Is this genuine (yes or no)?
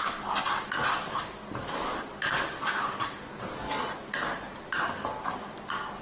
yes